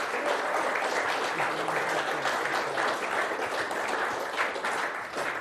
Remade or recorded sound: recorded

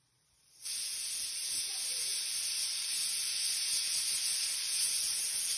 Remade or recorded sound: remade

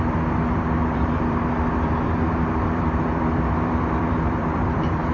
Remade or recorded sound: remade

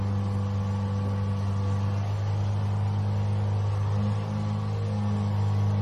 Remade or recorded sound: recorded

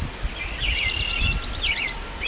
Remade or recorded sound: recorded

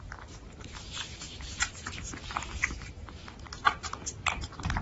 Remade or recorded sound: remade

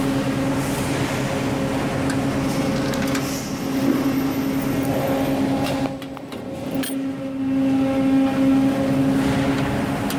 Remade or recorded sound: recorded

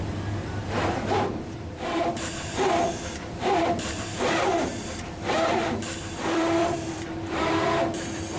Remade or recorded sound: remade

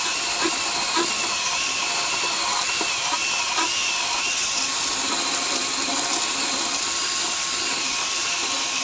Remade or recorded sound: remade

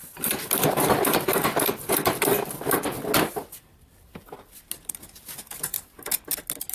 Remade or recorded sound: recorded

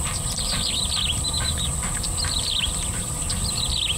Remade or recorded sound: remade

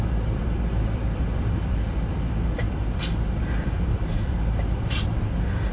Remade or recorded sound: remade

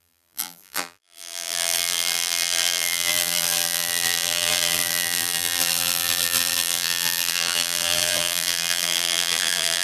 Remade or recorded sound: remade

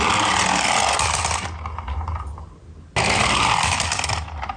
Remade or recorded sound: recorded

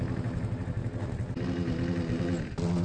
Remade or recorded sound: recorded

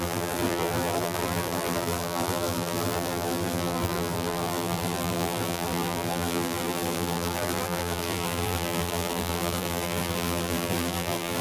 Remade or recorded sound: remade